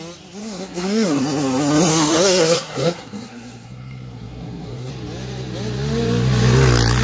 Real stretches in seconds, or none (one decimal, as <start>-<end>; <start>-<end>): 0.0-0.4; 1.2-1.9; 4.9-7.0